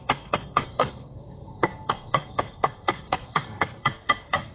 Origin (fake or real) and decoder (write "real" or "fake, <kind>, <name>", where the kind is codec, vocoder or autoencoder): fake, codec, SNAC